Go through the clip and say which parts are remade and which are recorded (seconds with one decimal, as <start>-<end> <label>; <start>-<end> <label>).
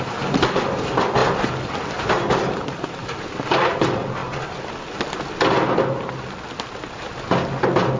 0.0-8.0 recorded